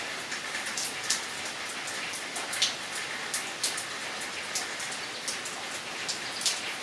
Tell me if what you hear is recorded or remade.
recorded